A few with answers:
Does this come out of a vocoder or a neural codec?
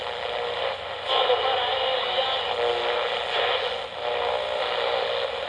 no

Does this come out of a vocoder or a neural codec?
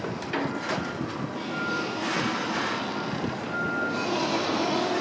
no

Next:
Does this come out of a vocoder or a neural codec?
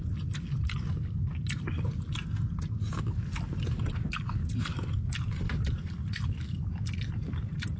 no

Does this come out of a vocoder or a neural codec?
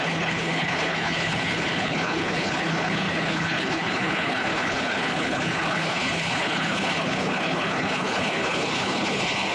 yes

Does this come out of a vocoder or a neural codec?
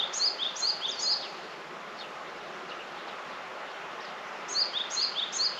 no